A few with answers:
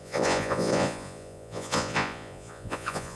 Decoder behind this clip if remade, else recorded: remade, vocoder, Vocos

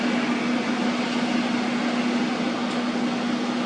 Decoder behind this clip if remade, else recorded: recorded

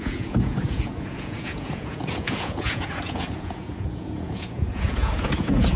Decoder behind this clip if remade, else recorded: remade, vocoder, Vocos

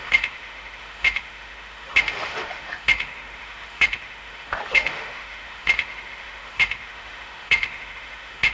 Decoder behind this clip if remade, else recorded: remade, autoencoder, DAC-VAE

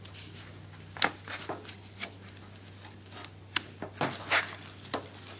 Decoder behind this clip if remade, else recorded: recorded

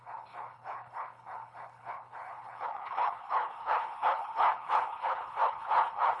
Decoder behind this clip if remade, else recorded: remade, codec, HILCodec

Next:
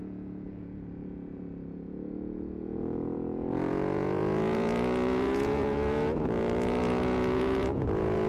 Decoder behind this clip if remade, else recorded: remade, vocoder, Vocos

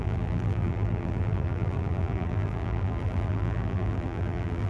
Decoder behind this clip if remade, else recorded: remade, vocoder, BigVGAN v2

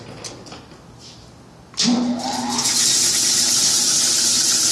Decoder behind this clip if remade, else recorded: recorded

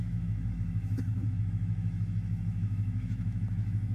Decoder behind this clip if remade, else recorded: remade, autoencoder, DAC-VAE